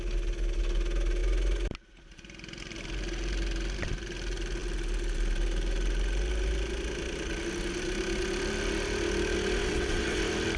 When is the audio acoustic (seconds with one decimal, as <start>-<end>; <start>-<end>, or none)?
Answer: 0.0-9.6; 10.2-10.6